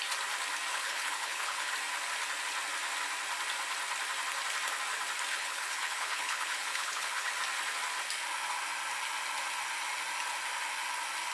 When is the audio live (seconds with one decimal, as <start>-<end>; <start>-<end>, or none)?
0.0-0.7; 1.7-5.3; 7.3-11.3